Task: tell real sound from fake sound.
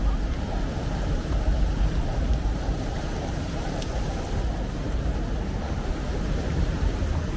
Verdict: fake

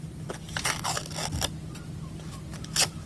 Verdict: real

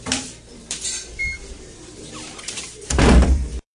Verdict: fake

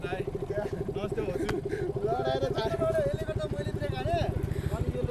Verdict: real